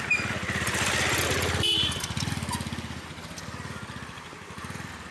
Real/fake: real